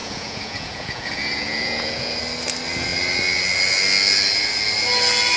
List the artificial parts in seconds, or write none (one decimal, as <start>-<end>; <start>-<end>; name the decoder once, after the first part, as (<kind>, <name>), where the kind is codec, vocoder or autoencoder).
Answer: 0.0-2.2 (vocoder, Vocos)